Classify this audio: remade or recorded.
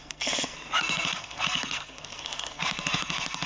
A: remade